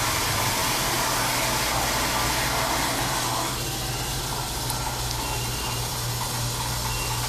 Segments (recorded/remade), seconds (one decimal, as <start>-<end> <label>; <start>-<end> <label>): 0.0-7.3 recorded